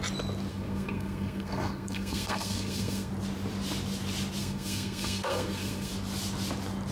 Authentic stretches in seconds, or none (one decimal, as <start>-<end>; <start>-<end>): 0.0-0.5; 3.1-4.4; 5.9-6.9